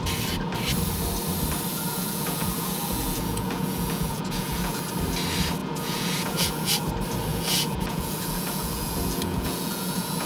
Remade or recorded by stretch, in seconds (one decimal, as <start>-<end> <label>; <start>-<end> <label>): 0.0-1.7 recorded; 1.7-4.8 remade; 4.8-5.6 recorded; 5.6-6.7 remade; 6.7-7.3 recorded; 7.3-10.3 remade